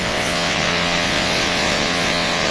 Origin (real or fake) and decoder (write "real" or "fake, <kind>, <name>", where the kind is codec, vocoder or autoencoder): fake, vocoder, WaveNeXt